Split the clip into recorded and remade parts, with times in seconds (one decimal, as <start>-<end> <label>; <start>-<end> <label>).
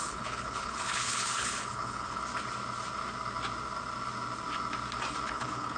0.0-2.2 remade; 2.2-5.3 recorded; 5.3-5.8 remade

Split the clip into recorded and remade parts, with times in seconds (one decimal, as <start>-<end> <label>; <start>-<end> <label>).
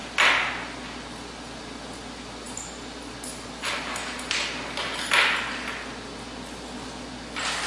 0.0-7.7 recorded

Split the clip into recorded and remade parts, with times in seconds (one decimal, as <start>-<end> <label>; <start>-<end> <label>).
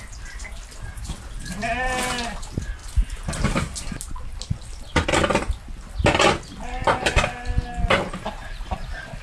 0.0-9.2 recorded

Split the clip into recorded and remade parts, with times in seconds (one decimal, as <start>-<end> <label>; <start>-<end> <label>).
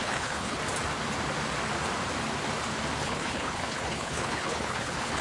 0.0-0.6 remade; 0.6-3.0 recorded; 3.0-5.2 remade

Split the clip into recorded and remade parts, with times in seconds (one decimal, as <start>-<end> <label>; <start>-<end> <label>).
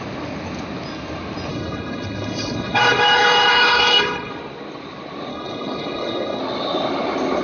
0.0-1.5 recorded; 1.5-4.3 remade; 4.3-5.3 recorded; 5.3-6.4 remade; 6.4-7.4 recorded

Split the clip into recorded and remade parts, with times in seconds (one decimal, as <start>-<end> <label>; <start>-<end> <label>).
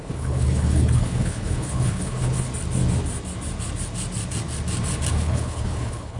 0.0-2.5 remade; 2.5-5.1 recorded; 5.1-6.2 remade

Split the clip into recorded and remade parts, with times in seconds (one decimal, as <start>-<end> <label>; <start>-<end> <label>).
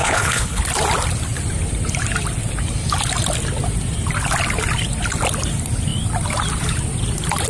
0.0-0.6 remade; 0.6-7.5 recorded